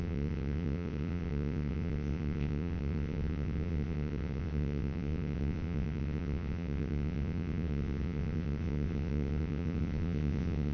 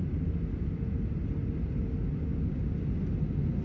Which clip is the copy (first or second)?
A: first